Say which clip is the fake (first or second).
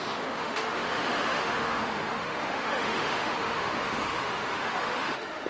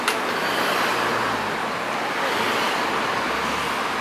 first